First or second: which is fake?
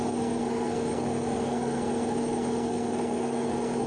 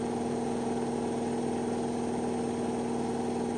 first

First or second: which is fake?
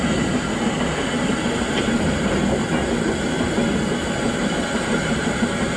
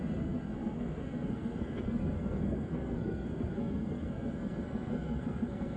second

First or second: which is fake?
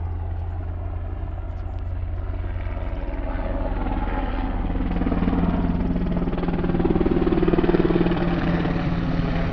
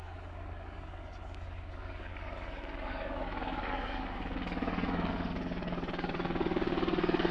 second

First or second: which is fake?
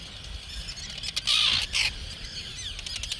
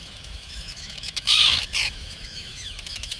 second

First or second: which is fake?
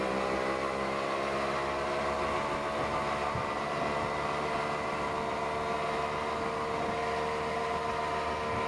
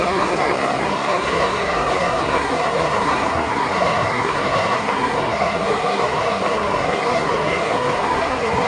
second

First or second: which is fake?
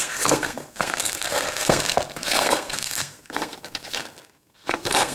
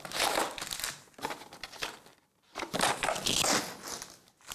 first